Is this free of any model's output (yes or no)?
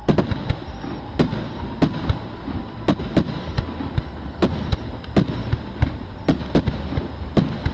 yes